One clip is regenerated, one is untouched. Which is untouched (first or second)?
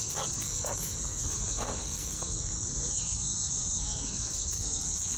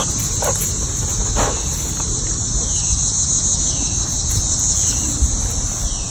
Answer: second